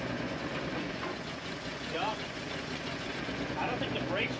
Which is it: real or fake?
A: fake